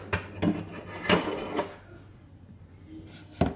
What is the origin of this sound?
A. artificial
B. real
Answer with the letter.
B